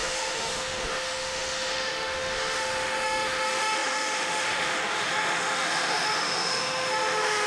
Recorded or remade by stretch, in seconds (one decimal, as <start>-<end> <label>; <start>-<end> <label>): 0.0-7.5 remade